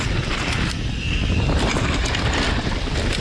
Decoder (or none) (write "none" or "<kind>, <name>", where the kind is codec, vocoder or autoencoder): none